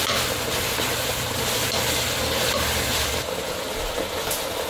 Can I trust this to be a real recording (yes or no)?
yes